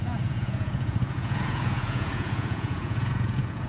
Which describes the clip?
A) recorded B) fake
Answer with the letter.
B